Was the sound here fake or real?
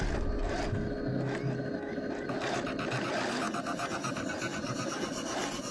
real